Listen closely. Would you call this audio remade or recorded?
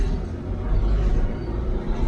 recorded